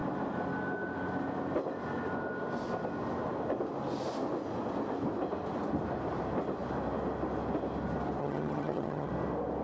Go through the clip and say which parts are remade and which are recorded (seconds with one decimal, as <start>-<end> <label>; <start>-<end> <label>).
0.0-8.2 recorded; 8.2-9.1 remade; 9.1-9.6 recorded